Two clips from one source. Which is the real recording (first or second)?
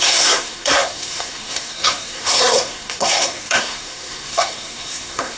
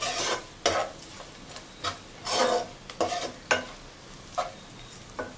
second